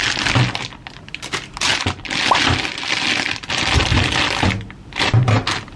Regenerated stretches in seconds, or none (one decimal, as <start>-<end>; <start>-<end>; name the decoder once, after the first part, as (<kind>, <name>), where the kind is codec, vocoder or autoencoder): none